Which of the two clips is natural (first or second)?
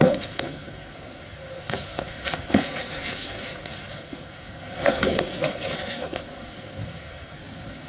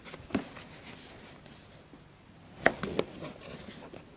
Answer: second